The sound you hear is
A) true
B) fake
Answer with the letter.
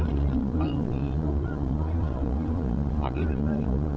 B